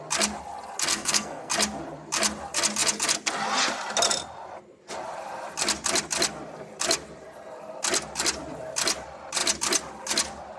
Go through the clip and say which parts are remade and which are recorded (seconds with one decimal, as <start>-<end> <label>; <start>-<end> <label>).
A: 0.0-0.9 recorded; 0.9-1.5 remade; 1.5-10.6 recorded